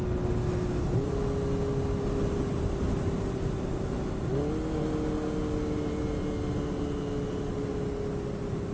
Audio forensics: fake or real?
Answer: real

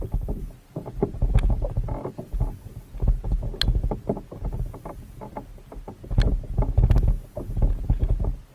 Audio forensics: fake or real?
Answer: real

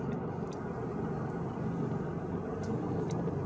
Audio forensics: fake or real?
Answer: real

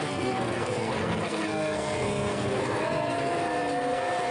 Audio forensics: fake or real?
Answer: fake